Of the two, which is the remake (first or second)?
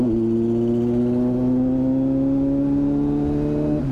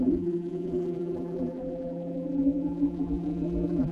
second